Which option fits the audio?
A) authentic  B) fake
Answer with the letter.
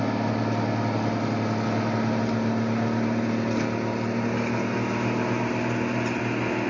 A